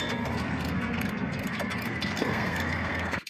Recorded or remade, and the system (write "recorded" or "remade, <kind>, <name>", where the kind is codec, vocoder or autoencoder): remade, codec, SNAC